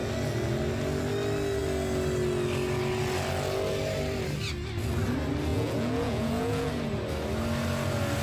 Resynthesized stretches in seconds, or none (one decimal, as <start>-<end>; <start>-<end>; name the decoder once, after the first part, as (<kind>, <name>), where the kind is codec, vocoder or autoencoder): 5.5-6.7 (vocoder, Vocos)

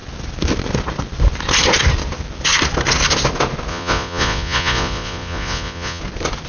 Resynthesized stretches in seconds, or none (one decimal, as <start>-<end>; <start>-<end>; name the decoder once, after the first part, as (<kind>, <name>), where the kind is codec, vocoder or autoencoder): 3.7-6.0 (vocoder, Vocos)

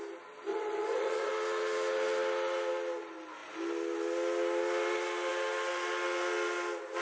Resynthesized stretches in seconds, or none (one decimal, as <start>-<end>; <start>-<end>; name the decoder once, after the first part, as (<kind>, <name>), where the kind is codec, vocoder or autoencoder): 0.5-1.3 (vocoder, Vocos)

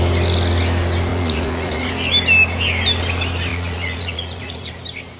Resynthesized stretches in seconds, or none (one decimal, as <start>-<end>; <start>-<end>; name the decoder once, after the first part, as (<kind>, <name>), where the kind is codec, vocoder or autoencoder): 1.1-1.9 (vocoder, Vocos); 3.5-4.7

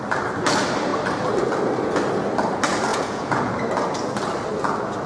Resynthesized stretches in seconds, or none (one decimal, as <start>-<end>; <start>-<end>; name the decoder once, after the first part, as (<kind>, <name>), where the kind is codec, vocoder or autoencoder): 2.9-3.5 (vocoder, Vocos)

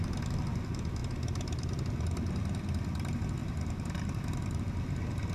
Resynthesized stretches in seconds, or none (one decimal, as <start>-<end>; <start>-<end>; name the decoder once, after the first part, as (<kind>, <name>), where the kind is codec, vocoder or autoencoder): none

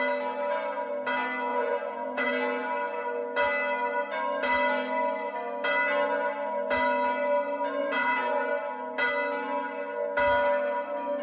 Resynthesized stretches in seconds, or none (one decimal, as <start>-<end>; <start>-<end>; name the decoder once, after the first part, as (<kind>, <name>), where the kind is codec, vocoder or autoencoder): 1.5-2.3 (vocoder, Vocos); 7.8-8.5